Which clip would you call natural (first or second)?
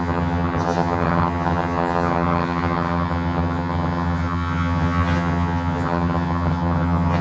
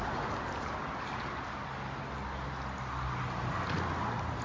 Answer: second